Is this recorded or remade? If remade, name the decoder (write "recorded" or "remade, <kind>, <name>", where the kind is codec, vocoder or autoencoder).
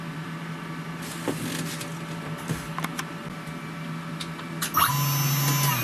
recorded